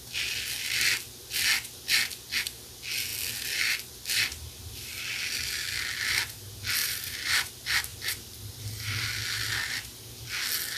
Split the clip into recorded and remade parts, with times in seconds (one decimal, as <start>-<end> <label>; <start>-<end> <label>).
0.0-6.8 recorded; 6.8-7.5 remade; 7.5-7.9 recorded; 7.9-9.2 remade; 9.2-10.8 recorded